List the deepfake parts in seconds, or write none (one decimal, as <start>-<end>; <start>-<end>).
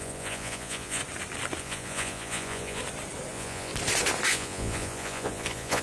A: 0.0-1.0; 1.6-2.8; 3.3-3.7; 4.3-5.8